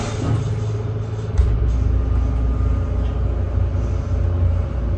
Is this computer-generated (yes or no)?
no